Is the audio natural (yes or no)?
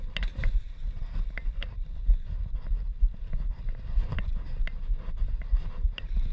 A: yes